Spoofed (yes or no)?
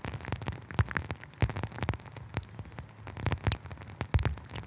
no